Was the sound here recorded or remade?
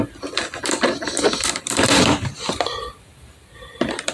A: remade